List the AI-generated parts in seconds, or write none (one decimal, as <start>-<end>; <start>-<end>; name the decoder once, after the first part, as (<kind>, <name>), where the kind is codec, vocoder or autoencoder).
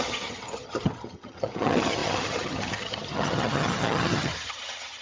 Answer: 0.0-5.0 (vocoder, HiFi-GAN)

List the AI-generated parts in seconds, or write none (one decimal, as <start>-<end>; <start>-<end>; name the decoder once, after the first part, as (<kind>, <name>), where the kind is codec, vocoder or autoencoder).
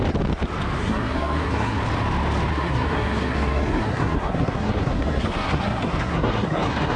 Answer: 0.8-1.8 (codec, SNAC); 2.5-7.0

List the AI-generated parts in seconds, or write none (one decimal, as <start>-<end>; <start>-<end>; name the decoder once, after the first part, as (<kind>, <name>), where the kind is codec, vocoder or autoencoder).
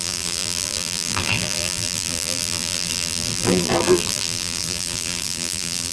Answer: 0.0-5.9 (vocoder, BigVGAN v2)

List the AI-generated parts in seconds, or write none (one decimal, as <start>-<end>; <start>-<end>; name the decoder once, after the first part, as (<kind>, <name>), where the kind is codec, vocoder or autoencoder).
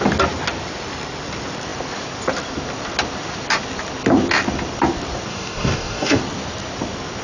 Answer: 5.3-6.2 (codec, DAC)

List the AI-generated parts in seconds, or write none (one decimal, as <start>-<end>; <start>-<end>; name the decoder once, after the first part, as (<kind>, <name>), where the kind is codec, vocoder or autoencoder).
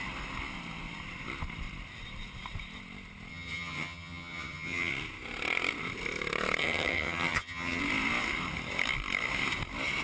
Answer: 3.3-4.9 (vocoder, HiFi-GAN); 6.6-7.8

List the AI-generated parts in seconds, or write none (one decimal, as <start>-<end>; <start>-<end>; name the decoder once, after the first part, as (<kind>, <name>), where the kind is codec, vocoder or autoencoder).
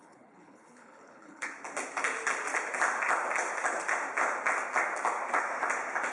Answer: 0.0-1.5 (codec, HILCodec)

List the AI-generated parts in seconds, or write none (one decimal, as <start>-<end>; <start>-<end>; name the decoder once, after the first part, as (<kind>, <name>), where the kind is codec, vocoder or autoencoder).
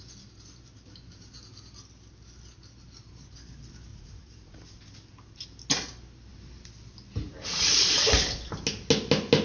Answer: 3.9-4.6 (vocoder, Vocos)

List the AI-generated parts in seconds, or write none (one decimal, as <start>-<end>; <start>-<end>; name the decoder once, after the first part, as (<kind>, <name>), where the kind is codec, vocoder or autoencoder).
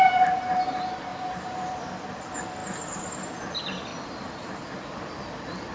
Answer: 1.1-2.0 (vocoder, BigVGAN v2); 2.6-3.3; 3.9-4.7